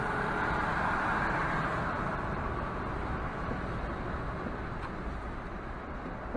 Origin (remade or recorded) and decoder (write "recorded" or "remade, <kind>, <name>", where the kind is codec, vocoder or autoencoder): recorded